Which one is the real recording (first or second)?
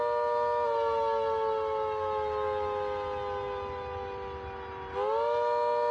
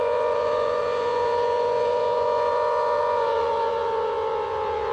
first